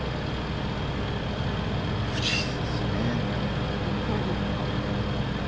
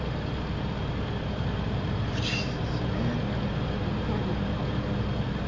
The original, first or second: first